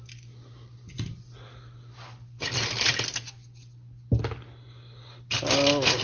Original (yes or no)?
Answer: yes